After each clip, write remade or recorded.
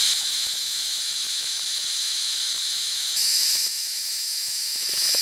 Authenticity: remade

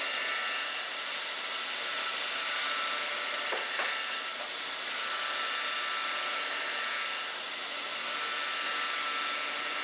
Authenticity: recorded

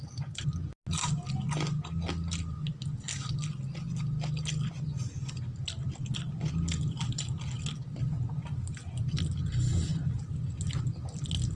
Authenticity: recorded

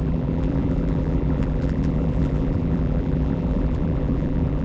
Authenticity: remade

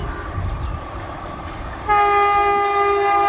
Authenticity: recorded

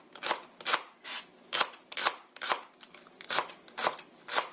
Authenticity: recorded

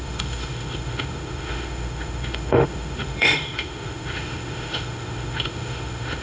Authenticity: remade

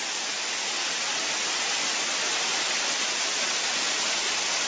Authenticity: recorded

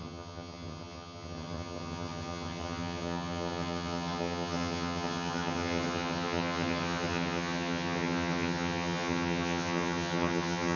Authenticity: remade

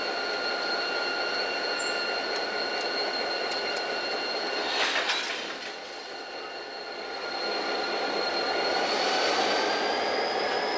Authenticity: recorded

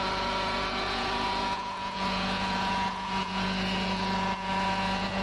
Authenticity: remade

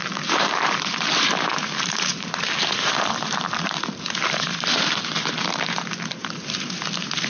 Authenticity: remade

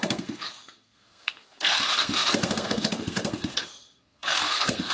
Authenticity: remade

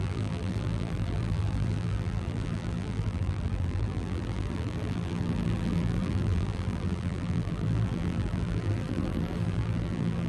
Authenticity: remade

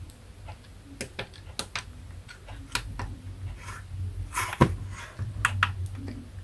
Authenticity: recorded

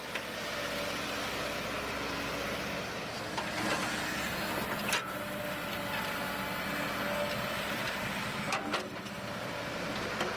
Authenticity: recorded